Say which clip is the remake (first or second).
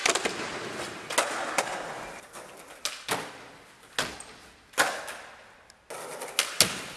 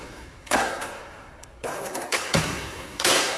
second